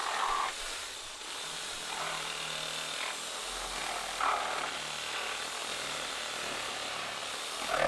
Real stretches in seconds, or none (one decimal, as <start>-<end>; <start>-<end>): 0.0-5.6; 7.1-7.9